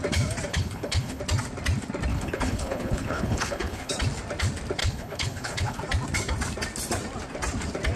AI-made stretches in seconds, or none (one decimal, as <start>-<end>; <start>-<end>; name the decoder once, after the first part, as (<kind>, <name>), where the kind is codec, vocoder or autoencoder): 0.5-1.2 (codec, HILCodec); 2.1-3.9; 4.8-5.8

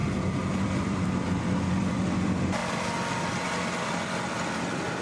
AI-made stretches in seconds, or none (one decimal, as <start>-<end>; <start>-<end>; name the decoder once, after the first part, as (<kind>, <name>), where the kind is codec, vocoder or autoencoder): 0.0-2.6 (vocoder, BigVGAN v2)

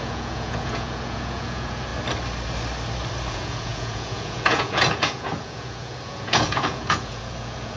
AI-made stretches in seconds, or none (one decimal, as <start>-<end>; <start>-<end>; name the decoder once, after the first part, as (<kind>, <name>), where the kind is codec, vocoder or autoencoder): 0.0-1.9 (vocoder, Vocos); 3.3-7.8

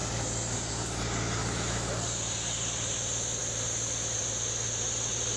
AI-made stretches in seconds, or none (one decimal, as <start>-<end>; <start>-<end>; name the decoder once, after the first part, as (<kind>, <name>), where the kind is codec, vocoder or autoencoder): 1.4-1.9 (autoencoder, DAC-VAE)

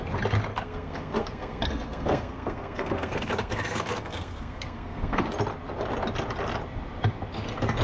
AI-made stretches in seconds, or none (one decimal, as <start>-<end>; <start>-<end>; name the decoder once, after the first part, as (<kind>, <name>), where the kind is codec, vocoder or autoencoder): 0.5-5.2 (codec, SNAC)

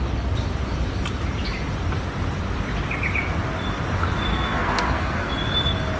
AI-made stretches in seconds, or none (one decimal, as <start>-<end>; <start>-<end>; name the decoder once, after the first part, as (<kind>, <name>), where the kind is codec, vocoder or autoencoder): 4.3-5.3 (codec, SNAC)

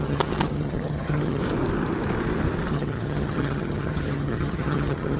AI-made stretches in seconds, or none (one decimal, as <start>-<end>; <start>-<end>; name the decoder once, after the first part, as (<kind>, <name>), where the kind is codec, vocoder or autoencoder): 0.0-1.4 (vocoder, HiFi-GAN); 2.7-5.2